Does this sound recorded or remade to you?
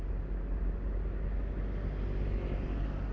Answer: recorded